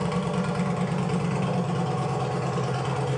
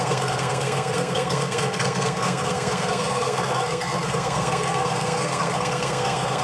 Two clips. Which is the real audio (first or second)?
first